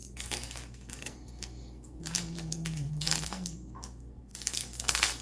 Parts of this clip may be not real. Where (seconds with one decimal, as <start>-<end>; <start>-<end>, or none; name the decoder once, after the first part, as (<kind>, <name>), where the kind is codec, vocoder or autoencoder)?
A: 0.0-5.2 (codec, SNAC)